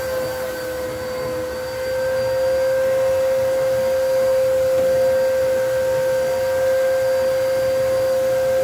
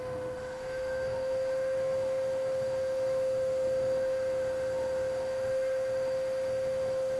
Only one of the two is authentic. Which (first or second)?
first